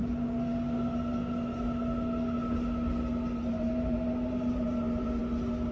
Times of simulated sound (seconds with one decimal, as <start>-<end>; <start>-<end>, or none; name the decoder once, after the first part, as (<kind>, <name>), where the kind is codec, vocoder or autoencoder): 3.4-5.2 (vocoder, BigVGAN v2)